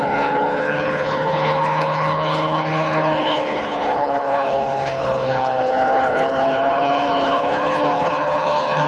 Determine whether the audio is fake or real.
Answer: fake